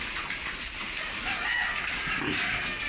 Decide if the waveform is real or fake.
real